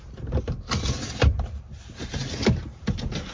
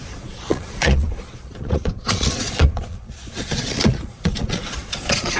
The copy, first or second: second